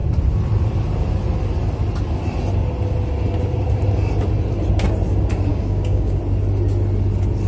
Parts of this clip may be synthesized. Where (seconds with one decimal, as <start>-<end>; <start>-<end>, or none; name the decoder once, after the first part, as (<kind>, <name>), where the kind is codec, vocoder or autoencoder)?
5.5-6.2 (codec, DAC)